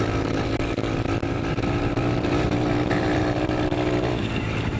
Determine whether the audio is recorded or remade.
remade